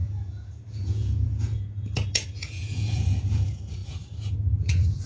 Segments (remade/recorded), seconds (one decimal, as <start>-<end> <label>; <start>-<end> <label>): 0.0-5.1 remade